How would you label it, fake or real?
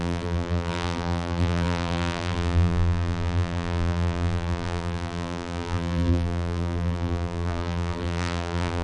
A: fake